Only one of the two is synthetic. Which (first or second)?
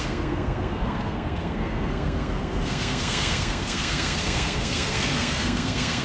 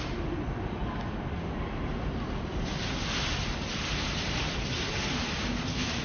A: first